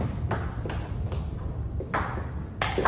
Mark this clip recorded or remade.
recorded